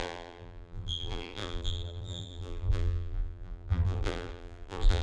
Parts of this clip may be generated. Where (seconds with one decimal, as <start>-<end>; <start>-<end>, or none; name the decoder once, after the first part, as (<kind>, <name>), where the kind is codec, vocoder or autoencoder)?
0.0-5.0 (vocoder, BigVGAN v2)